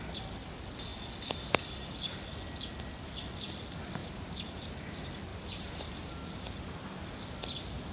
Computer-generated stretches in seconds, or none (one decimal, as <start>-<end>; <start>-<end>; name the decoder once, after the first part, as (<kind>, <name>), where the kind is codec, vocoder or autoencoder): 4.0-4.7 (vocoder, BigVGAN v2); 5.3-7.0